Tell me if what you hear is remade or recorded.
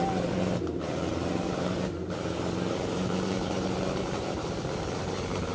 remade